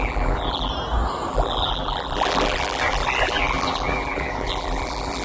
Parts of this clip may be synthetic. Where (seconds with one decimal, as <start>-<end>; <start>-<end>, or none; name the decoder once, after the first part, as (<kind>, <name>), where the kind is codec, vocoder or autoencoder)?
0.0-0.7 (vocoder, BigVGAN v2); 1.3-5.2